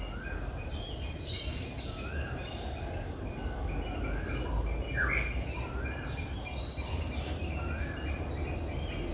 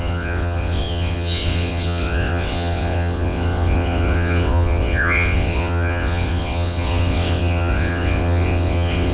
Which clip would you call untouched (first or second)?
first